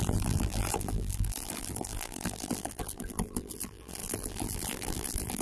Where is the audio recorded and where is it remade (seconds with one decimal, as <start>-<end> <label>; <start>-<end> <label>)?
0.0-5.4 remade

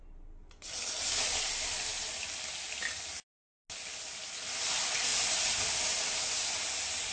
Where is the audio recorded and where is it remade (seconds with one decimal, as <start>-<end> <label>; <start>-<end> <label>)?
0.0-7.1 recorded

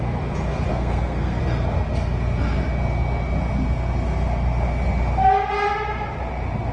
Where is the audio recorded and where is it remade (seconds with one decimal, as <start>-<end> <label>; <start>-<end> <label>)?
0.0-0.7 recorded; 0.7-1.4 remade; 1.4-6.7 recorded

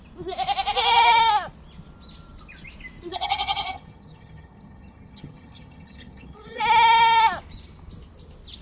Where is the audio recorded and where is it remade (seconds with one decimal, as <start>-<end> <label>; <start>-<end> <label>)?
0.0-3.1 recorded; 3.1-6.6 remade; 6.6-8.6 recorded

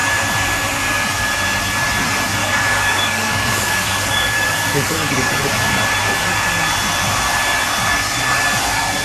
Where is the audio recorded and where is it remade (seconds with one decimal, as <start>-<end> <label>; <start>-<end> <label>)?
0.0-2.4 recorded; 2.4-5.3 remade; 5.3-9.0 recorded

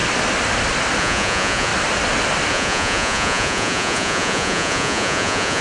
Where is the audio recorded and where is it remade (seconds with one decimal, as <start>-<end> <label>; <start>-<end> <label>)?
0.0-1.0 recorded; 1.0-1.7 remade; 1.7-2.5 recorded; 2.5-5.6 remade

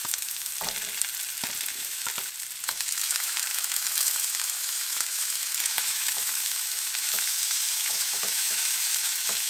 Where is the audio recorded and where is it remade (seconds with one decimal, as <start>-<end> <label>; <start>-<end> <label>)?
0.0-0.5 remade; 0.5-1.7 recorded; 1.7-2.1 remade; 2.1-2.6 recorded; 2.6-9.5 remade

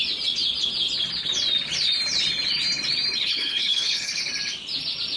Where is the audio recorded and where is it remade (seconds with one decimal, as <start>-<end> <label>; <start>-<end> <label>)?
0.0-3.2 recorded; 3.2-4.2 remade; 4.2-5.2 recorded